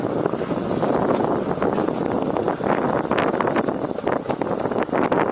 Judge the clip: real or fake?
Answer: real